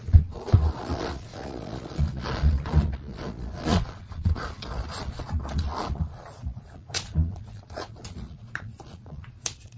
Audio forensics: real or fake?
fake